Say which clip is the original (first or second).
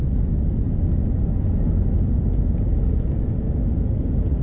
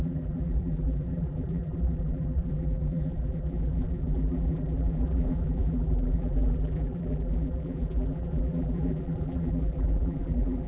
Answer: first